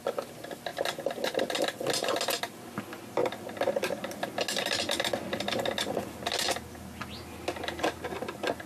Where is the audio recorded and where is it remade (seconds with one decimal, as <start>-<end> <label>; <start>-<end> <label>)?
0.0-8.7 recorded